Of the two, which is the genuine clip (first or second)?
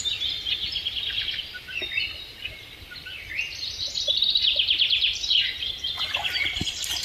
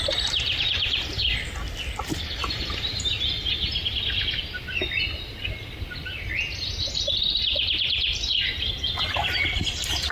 second